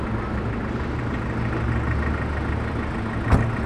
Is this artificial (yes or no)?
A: no